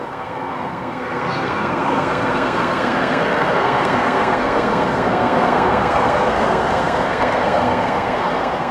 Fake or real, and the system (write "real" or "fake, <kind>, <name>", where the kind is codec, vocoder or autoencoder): fake, codec, SNAC